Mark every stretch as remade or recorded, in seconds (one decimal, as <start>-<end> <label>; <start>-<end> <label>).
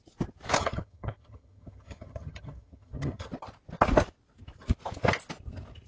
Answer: 0.0-0.6 recorded; 0.6-3.3 remade; 3.3-5.9 recorded